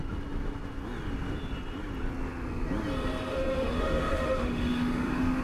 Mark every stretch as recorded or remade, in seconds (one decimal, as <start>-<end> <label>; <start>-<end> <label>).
0.0-3.3 recorded; 3.3-5.4 remade